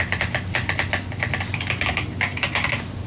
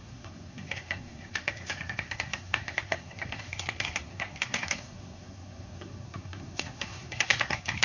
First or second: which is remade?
second